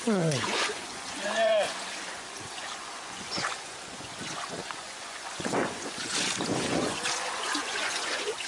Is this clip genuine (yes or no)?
no